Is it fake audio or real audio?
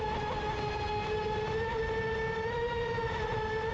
real